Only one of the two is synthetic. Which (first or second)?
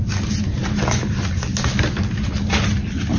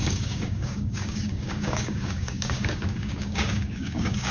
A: second